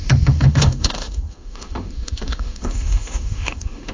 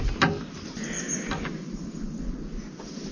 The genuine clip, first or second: second